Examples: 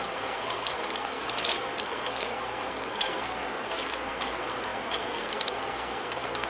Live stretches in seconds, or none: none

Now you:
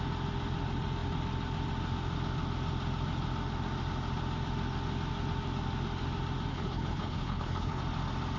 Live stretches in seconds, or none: 0.0-6.5; 7.8-8.4

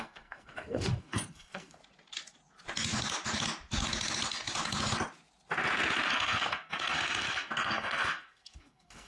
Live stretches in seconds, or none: 1.8-6.1

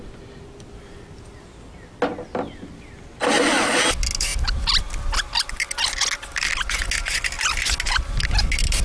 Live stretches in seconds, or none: 0.0-8.8